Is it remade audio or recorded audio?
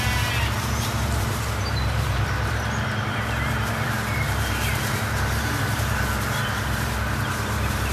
remade